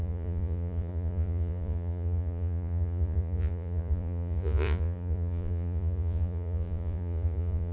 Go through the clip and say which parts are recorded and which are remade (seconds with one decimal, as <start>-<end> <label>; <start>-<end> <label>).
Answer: 0.0-7.7 remade